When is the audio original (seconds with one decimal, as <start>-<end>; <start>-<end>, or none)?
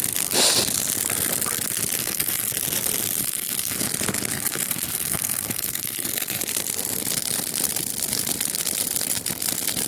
0.0-2.0; 2.5-3.2; 3.9-4.3; 6.4-9.9